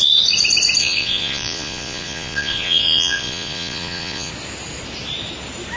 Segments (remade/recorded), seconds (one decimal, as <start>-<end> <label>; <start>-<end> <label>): 0.0-0.8 recorded; 0.8-4.3 remade; 4.3-5.8 recorded